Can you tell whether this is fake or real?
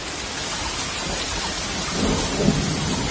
real